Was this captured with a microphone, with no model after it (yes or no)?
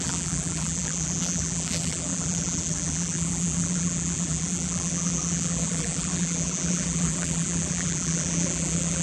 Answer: no